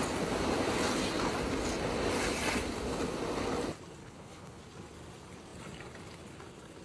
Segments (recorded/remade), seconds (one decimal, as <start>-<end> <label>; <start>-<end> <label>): 0.0-4.0 recorded; 4.0-4.6 remade; 4.6-6.8 recorded